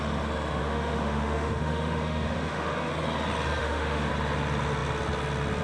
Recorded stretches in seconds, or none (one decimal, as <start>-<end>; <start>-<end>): 0.0-0.6; 2.9-3.6; 4.1-5.6